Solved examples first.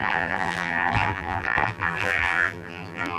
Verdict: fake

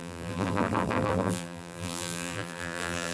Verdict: fake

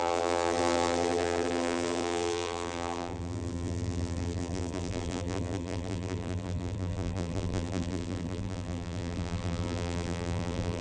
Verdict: fake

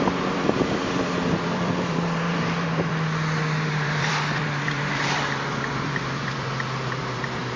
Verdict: fake